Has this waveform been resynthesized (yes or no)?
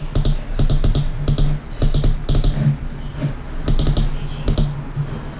no